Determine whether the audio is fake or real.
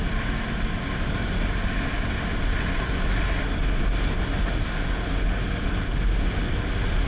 real